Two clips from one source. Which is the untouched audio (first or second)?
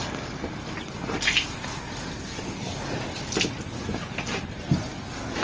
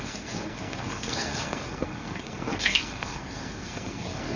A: first